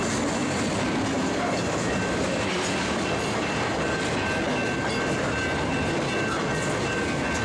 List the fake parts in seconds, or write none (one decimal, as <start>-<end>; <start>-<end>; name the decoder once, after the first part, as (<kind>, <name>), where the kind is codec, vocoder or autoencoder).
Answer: 0.4-4.0 (vocoder, BigVGAN v2)